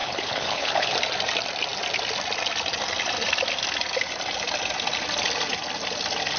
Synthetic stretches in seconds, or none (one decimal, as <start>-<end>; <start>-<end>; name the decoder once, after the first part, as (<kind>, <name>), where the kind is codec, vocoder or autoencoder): 0.0-0.9 (codec, HILCodec)